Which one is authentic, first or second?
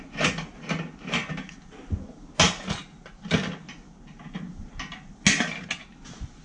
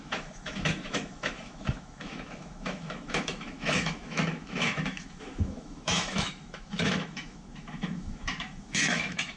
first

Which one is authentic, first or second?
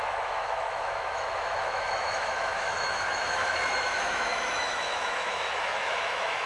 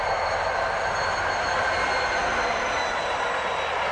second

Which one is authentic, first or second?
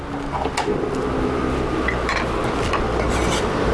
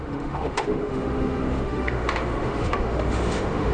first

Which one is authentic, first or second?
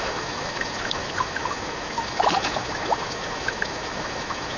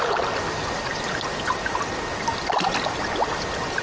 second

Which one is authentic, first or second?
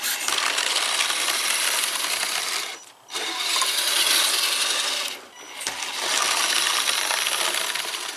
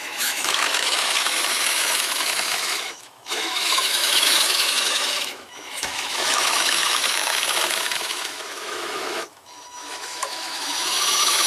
first